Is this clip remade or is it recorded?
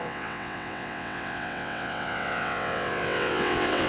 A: remade